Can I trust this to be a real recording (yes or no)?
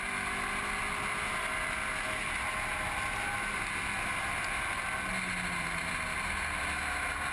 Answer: yes